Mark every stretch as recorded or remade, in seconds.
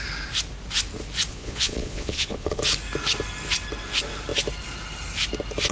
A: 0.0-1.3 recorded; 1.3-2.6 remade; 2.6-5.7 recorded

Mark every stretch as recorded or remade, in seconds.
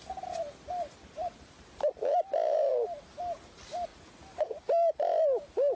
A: 0.0-5.8 recorded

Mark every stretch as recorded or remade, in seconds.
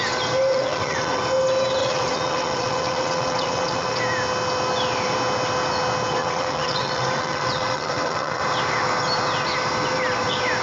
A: 0.0-0.5 recorded; 0.5-1.2 remade; 1.2-1.8 recorded; 1.8-4.0 remade; 4.0-6.2 recorded; 6.2-8.4 remade; 8.4-10.6 recorded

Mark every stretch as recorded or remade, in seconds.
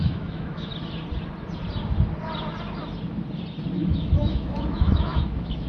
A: 0.0-0.7 remade; 0.7-3.8 recorded; 3.8-5.7 remade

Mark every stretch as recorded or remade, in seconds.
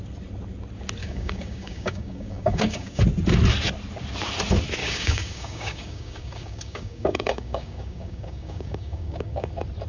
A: 0.0-1.0 recorded; 1.0-3.0 remade; 3.0-4.8 recorded; 4.8-9.5 remade; 9.5-9.9 recorded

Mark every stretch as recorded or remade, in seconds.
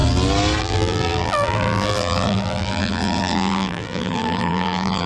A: 0.0-0.6 recorded; 0.6-5.1 remade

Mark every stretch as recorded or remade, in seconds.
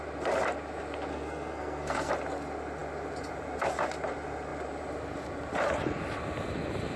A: 0.0-1.1 recorded; 1.1-2.1 remade; 2.1-7.0 recorded